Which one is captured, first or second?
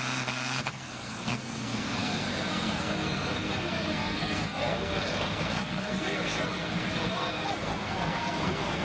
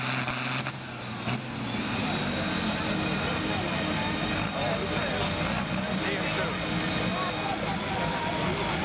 second